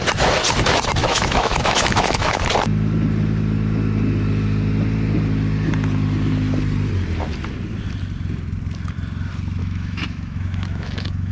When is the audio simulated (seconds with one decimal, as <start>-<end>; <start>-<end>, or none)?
1.0-2.4; 9.6-11.3